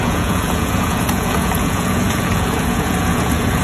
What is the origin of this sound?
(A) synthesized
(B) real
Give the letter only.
A